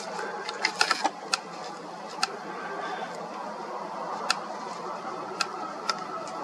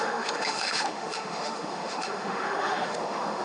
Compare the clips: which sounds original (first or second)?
first